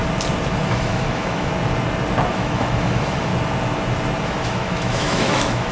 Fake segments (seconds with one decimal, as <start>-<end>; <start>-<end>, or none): 0.7-1.5; 2.3-3.3; 4.2-5.7